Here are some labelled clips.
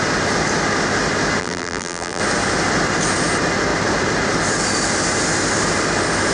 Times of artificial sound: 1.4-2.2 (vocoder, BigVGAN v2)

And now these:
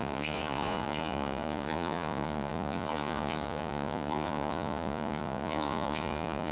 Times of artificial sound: 0.0-6.5 (vocoder, Vocos)

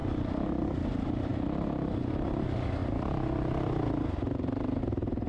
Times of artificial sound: none

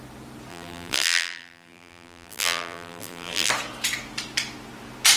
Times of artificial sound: 0.5-3.5 (vocoder, BigVGAN v2)

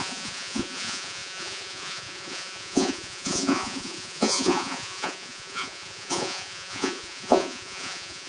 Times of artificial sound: 0.0-8.3 (vocoder, Vocos)

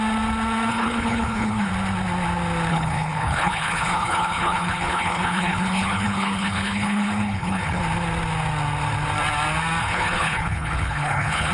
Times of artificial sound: 0.7-1.7 (codec, HILCodec); 2.7-7.8; 9.8-11.5